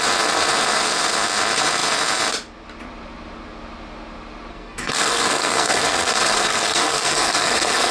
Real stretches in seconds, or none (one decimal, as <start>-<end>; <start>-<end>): 0.0-4.5

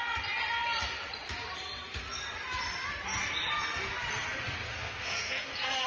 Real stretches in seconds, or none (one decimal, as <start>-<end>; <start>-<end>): 0.0-4.7

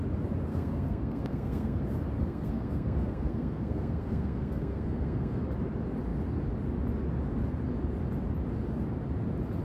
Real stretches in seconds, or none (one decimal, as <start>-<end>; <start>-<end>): 0.0-0.5; 1.8-2.2; 5.4-9.6

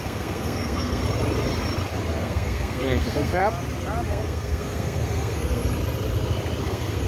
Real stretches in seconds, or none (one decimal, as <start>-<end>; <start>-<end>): 1.0-2.1; 3.4-4.1; 5.6-6.6

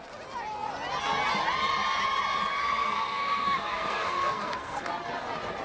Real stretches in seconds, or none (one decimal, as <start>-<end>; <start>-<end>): 0.0-2.5; 4.9-5.6

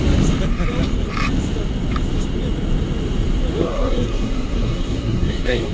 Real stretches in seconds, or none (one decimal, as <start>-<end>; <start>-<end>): 0.0-3.6

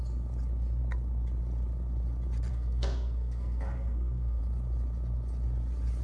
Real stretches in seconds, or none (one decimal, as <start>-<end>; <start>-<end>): 0.0-2.5; 4.4-6.0

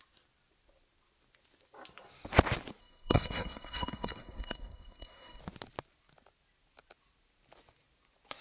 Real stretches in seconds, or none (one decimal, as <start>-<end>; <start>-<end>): 0.0-2.8; 5.4-8.4